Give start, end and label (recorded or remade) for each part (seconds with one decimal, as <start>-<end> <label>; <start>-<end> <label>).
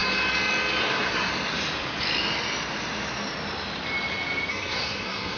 0.0-0.8 recorded; 0.8-1.3 remade; 1.3-4.5 recorded; 4.5-5.4 remade